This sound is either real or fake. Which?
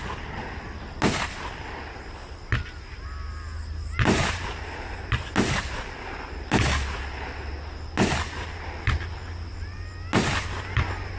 real